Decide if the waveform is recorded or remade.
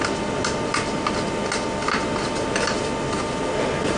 recorded